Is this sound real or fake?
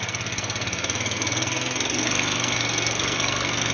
fake